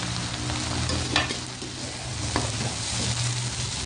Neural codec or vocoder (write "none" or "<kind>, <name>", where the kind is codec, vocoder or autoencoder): none